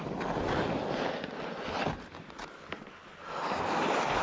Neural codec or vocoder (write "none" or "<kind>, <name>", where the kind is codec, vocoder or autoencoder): none